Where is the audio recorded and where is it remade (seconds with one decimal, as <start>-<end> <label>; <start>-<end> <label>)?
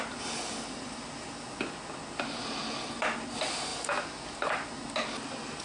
0.0-5.6 recorded